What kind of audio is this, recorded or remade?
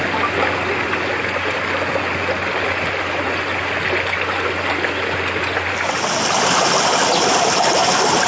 recorded